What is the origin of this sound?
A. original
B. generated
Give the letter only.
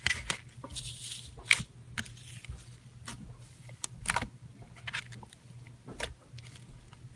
A